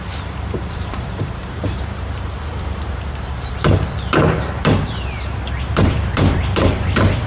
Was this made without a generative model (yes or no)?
no